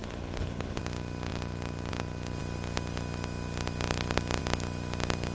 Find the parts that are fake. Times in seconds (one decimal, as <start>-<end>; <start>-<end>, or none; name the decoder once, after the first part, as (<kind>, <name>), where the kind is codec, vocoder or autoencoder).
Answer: 0.0-0.8 (codec, HILCodec)